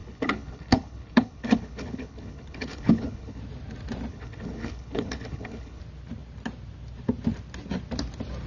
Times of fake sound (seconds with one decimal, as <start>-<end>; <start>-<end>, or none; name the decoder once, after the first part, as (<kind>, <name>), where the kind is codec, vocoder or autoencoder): 0.0-3.4 (codec, HILCodec); 4.1-5.8